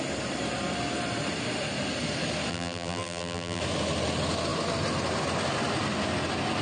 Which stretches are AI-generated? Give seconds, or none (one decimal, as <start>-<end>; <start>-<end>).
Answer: 2.5-3.6